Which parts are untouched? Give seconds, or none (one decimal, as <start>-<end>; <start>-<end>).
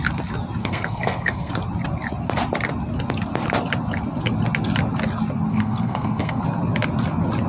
0.0-0.6; 1.5-5.5; 6.4-7.5